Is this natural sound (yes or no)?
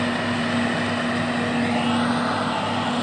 yes